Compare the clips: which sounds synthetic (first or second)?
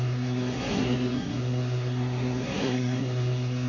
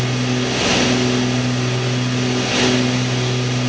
first